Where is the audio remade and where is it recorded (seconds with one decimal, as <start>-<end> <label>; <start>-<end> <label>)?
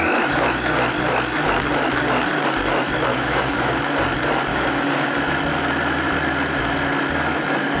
0.0-3.1 recorded; 3.1-3.8 remade; 3.8-4.5 recorded; 4.5-5.2 remade; 5.2-7.8 recorded